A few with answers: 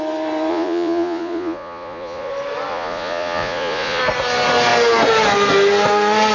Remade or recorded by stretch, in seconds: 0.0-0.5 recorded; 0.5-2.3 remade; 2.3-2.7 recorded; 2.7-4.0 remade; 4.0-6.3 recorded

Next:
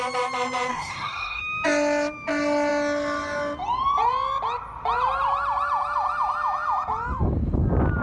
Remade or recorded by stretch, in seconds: 0.0-0.7 recorded; 0.7-1.4 remade; 1.4-8.0 recorded

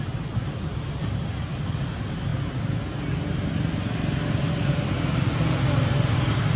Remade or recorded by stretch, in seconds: 0.0-6.6 recorded

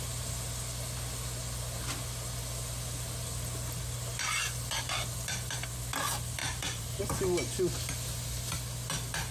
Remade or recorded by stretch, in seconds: 0.0-6.4 recorded; 6.4-7.0 remade; 7.0-9.3 recorded